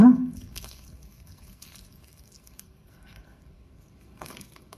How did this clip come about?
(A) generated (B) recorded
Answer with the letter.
A